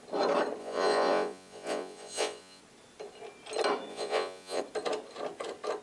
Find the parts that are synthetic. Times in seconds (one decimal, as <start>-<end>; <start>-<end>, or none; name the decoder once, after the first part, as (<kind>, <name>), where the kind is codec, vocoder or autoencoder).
0.6-2.6 (vocoder, Vocos); 3.9-4.6